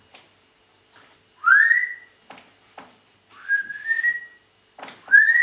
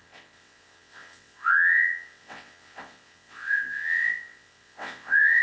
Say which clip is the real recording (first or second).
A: first